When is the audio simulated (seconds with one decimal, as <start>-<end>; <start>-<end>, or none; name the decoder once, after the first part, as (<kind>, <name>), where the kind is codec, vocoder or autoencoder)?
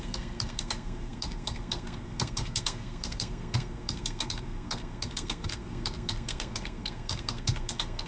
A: 0.0-8.1 (codec, SNAC)